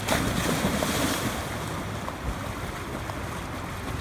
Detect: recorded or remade recorded